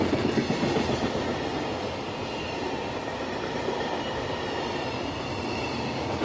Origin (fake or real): real